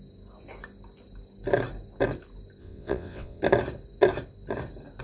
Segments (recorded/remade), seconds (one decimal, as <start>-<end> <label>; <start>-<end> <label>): 0.0-2.6 recorded; 2.6-3.4 remade; 3.4-5.0 recorded